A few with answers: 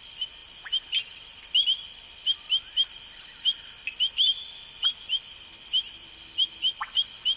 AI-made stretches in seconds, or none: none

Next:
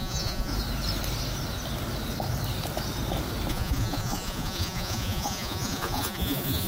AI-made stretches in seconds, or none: 0.0-0.5 (vocoder, Vocos); 3.5-6.7